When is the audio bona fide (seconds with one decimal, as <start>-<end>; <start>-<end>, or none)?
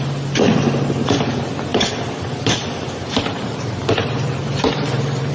0.0-1.7